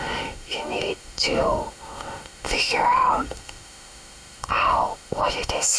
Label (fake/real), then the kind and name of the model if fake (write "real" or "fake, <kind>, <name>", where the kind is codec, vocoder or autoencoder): fake, autoencoder, DAC-VAE